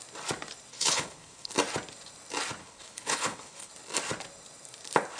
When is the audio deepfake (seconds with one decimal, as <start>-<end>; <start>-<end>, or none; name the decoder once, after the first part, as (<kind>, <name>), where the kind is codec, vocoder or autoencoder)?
0.7-1.5 (codec, HILCodec); 2.6-3.7